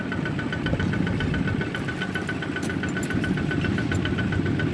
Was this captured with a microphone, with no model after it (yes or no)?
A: yes